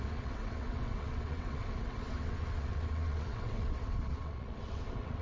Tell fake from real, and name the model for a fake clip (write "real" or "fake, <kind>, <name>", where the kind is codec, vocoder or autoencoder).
fake, vocoder, WaveNeXt